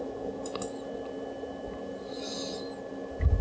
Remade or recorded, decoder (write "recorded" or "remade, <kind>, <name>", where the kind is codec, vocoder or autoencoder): recorded